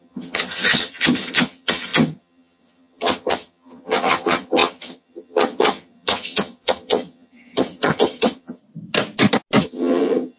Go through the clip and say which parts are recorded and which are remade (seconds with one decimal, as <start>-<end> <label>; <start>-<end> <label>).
0.0-8.6 remade; 8.6-9.6 recorded; 9.6-10.4 remade